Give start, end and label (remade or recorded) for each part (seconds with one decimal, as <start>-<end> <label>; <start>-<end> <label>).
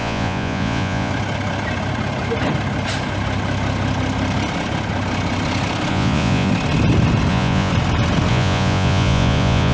0.0-1.1 remade; 1.1-5.9 recorded; 5.9-6.5 remade; 6.5-7.3 recorded; 7.3-7.7 remade; 7.7-8.3 recorded; 8.3-9.7 remade